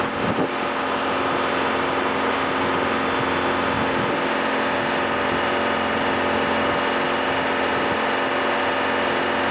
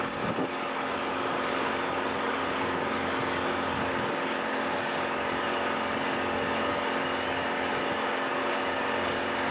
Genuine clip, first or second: first